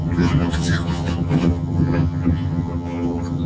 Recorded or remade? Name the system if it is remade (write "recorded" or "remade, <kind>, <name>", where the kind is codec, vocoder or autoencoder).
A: remade, vocoder, HiFi-GAN